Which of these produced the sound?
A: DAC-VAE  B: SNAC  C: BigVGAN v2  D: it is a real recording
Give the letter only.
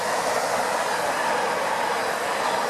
D